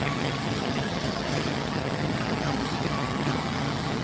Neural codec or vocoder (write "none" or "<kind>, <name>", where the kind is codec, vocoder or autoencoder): vocoder, HiFi-GAN